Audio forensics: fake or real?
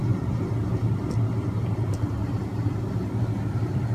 real